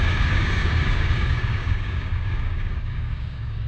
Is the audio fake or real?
fake